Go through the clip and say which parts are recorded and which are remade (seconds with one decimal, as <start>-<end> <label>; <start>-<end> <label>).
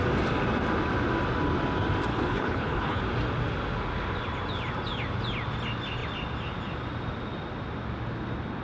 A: 0.0-2.1 recorded; 2.1-3.0 remade; 3.0-8.6 recorded